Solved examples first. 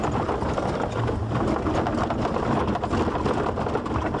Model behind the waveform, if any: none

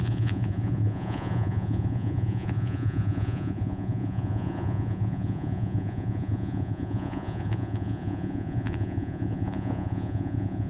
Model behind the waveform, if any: vocoder, Vocos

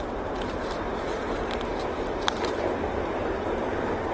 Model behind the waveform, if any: vocoder, BigVGAN v2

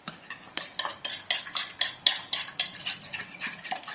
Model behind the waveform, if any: none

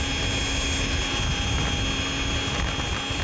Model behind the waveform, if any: none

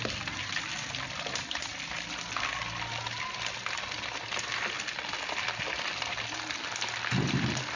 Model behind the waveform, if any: none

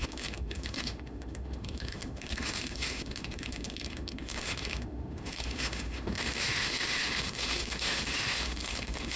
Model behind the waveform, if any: autoencoder, DAC-VAE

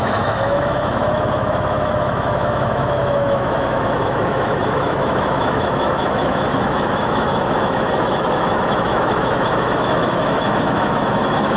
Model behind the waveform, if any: autoencoder, DAC-VAE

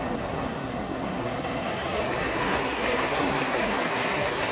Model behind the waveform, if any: codec, SNAC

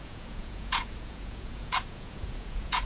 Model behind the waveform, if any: vocoder, Vocos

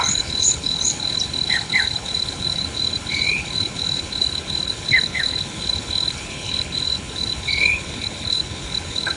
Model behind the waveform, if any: codec, HILCodec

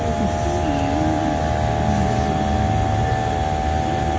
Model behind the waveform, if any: none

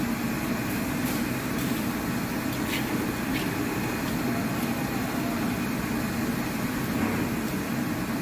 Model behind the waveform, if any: none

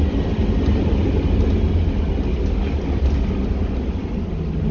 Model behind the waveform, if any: none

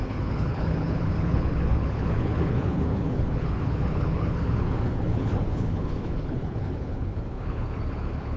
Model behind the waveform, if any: codec, HILCodec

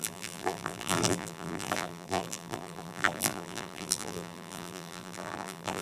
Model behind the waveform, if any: vocoder, BigVGAN v2